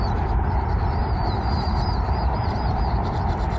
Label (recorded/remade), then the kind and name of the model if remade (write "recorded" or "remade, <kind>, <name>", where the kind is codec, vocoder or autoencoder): remade, vocoder, BigVGAN v2